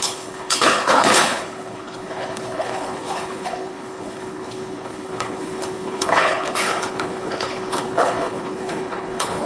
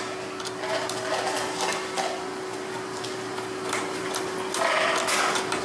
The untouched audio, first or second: second